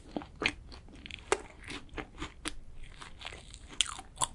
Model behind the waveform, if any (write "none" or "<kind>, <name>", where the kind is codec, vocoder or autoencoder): none